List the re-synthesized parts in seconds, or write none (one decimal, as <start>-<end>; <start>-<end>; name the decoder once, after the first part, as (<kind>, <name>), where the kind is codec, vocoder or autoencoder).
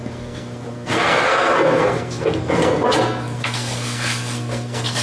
0.0-5.0 (codec, SNAC)